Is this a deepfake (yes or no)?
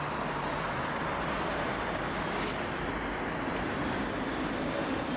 no